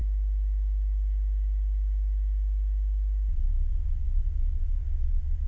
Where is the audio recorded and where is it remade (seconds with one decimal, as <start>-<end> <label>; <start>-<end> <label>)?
0.0-3.3 recorded; 3.3-5.5 remade